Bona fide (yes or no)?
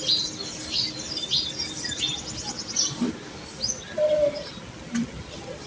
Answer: yes